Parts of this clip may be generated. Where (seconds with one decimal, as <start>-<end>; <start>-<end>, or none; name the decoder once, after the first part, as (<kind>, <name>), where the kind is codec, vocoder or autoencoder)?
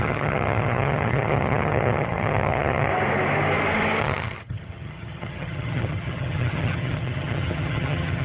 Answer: 0.0-2.9 (vocoder, HiFi-GAN); 4.0-8.2